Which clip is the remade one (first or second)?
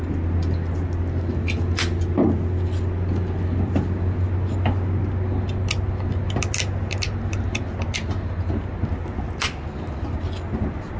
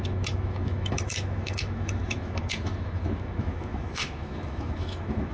second